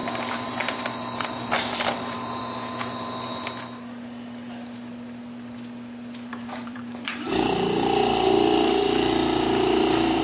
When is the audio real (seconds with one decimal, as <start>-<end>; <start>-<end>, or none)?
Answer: 2.4-6.3